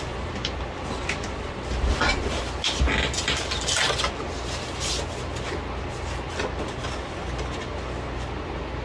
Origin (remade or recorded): recorded